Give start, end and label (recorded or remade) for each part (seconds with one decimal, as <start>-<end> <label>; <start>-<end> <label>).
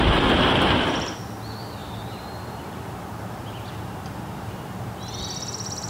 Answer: 0.0-1.8 recorded; 1.8-5.2 remade; 5.2-5.9 recorded